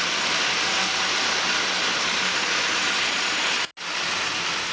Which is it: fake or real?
real